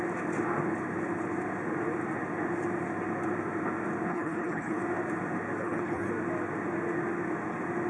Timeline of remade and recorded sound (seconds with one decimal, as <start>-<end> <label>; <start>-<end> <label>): 0.0-4.1 recorded; 4.1-4.8 remade; 4.8-5.6 recorded; 5.6-6.1 remade; 6.1-7.9 recorded

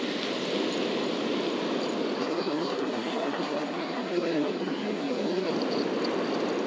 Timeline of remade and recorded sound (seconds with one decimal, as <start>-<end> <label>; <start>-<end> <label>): 0.0-2.2 recorded; 2.2-5.5 remade; 5.5-6.7 recorded

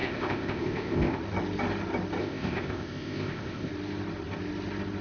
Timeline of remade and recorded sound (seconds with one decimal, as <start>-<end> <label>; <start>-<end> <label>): 0.0-1.2 remade; 1.2-2.2 recorded; 2.2-3.7 remade; 3.7-5.0 recorded